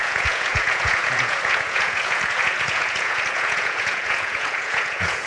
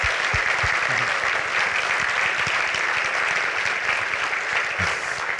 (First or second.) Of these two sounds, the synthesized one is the first